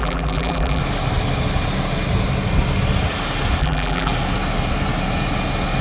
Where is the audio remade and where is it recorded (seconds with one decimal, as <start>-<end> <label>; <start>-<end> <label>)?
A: 0.0-0.8 remade; 0.8-3.6 recorded; 3.6-4.1 remade; 4.1-5.8 recorded